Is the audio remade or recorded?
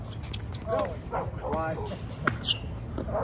recorded